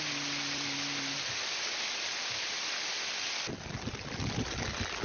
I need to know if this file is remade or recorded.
recorded